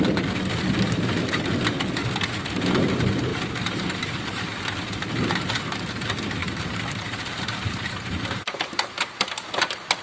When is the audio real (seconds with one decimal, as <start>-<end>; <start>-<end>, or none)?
0.0-3.3; 4.4-6.4; 8.6-10.0